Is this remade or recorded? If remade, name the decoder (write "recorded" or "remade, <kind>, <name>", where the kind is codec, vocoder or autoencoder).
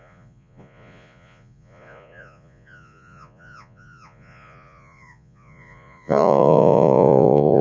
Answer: remade, vocoder, Vocos